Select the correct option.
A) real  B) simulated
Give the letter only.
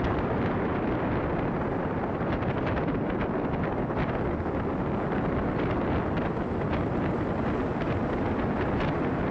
A